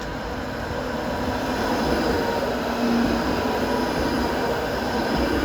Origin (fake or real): real